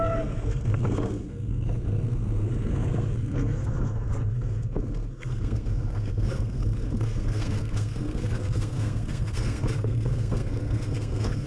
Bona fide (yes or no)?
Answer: no